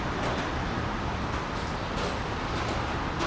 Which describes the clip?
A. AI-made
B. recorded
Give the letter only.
B